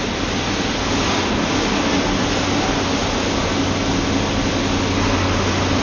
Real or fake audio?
real